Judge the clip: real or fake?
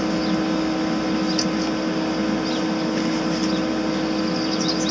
real